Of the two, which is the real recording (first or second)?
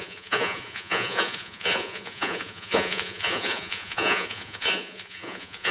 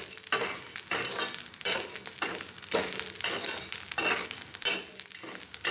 second